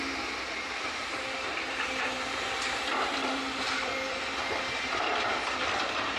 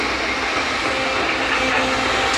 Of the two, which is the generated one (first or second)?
first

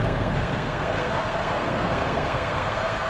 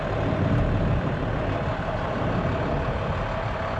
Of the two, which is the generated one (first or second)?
first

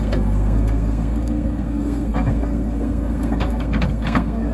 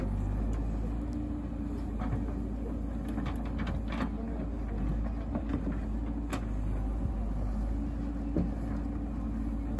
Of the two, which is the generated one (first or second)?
first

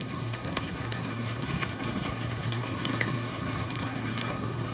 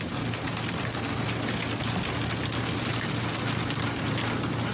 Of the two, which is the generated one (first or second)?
first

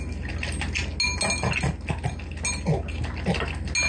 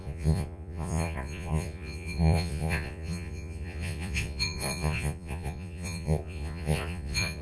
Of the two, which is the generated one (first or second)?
second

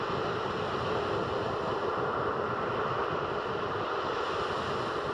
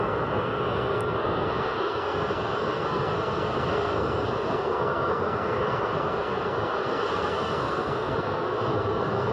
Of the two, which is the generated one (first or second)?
second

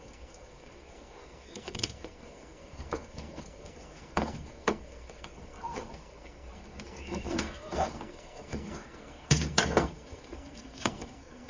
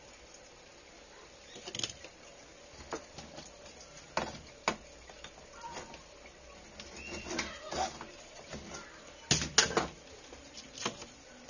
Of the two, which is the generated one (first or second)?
first